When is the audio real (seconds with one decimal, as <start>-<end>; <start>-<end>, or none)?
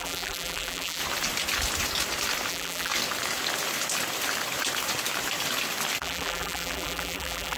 1.0-2.5; 2.9-6.0